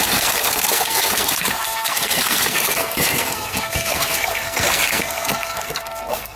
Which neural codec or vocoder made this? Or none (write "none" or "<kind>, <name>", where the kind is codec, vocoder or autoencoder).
codec, SNAC